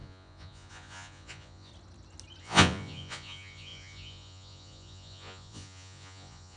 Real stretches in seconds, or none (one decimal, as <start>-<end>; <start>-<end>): 1.7-2.4